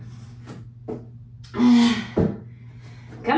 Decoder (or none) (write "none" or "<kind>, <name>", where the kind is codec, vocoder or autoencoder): none